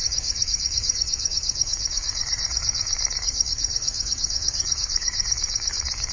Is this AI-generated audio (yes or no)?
yes